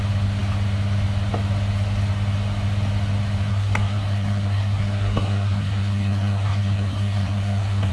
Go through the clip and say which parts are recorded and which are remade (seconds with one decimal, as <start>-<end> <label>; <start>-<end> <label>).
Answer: 0.0-3.5 recorded; 3.5-7.9 remade